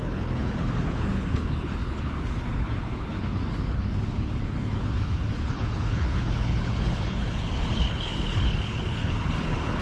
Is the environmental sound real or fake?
fake